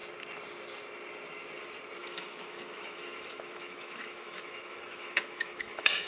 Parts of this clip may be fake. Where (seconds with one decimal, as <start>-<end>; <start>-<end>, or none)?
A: 2.0-6.1